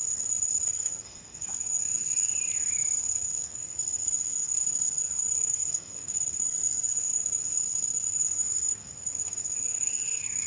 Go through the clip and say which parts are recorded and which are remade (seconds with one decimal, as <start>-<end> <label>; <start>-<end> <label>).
0.0-2.3 remade; 2.3-3.0 recorded; 3.0-10.5 remade